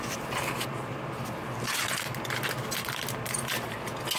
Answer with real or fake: real